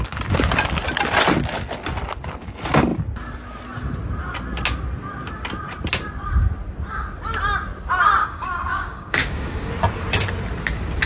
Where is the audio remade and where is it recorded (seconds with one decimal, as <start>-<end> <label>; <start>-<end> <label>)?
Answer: 0.0-8.2 recorded; 8.2-9.7 remade; 9.7-11.1 recorded